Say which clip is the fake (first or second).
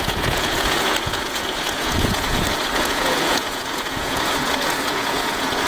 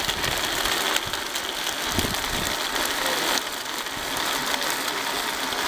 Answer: first